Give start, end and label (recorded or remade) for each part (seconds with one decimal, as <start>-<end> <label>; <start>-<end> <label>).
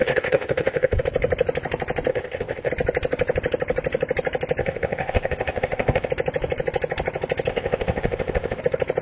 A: 0.0-1.0 remade; 1.0-2.1 recorded; 2.1-2.7 remade; 2.7-4.6 recorded; 4.6-6.1 remade; 6.1-7.5 recorded; 7.5-8.6 remade; 8.6-9.0 recorded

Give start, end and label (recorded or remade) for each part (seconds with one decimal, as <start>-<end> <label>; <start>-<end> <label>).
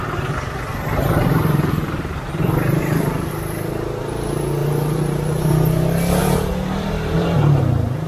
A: 0.0-0.7 recorded; 0.7-3.3 remade; 3.3-4.6 recorded; 4.6-5.5 remade; 5.5-6.2 recorded; 6.2-7.6 remade; 7.6-8.1 recorded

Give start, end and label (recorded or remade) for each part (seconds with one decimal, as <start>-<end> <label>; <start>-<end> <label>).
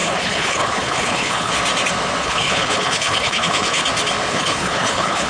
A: 0.0-1.5 remade; 1.5-2.2 recorded; 2.2-3.8 remade; 3.8-4.3 recorded; 4.3-5.3 remade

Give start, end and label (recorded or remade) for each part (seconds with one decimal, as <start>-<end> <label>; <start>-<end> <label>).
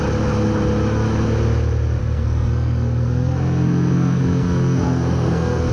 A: 0.0-2.0 recorded; 2.0-5.7 remade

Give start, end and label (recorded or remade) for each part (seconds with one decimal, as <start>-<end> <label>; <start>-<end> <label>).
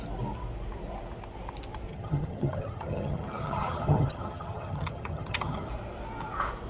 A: 0.0-1.9 recorded; 1.9-5.7 remade; 5.7-6.7 recorded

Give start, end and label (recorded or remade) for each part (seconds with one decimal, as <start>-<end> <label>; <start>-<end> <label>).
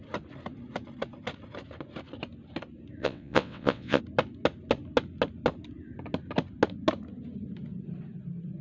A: 0.0-3.0 recorded; 3.0-4.0 remade; 4.0-8.6 recorded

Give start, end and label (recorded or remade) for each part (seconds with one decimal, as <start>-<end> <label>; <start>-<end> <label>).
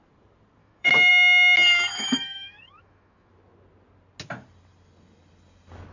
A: 0.0-0.6 recorded; 0.6-1.1 remade; 1.1-1.9 recorded; 1.9-3.3 remade; 3.3-5.9 recorded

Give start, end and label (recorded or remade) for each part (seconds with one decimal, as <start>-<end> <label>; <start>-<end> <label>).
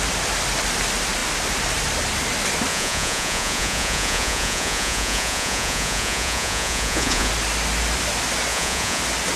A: 0.0-2.7 recorded; 2.7-7.3 remade; 7.3-8.5 recorded; 8.5-9.0 remade; 9.0-9.4 recorded